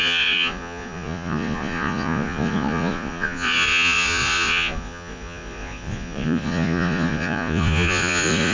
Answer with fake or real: fake